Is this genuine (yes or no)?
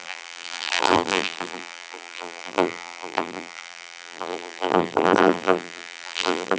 no